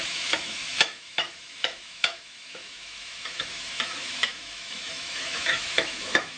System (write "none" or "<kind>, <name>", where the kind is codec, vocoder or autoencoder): autoencoder, DAC-VAE